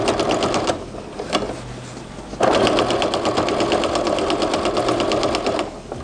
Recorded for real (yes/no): yes